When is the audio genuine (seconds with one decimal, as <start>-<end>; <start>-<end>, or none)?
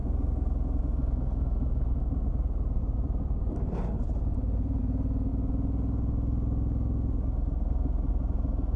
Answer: 0.0-2.8; 4.8-8.8